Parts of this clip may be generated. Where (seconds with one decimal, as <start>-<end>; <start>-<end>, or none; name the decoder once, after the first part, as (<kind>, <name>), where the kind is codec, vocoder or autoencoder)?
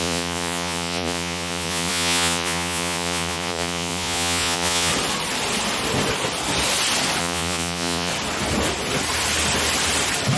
0.0-4.9 (vocoder, Vocos); 7.2-8.1